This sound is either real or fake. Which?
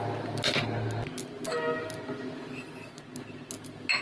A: real